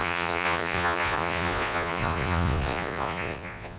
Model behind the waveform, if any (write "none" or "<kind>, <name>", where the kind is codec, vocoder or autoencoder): vocoder, Vocos